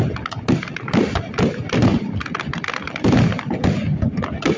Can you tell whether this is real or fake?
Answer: real